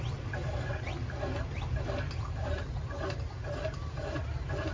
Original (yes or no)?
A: yes